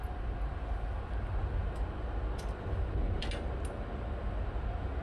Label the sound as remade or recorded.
recorded